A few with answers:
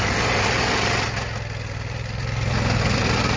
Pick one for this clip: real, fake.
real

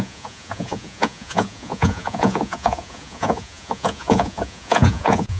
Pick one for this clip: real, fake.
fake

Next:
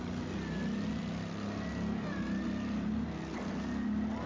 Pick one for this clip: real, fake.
real